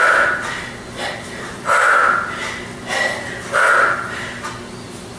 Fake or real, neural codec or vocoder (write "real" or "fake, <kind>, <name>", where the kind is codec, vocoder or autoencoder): real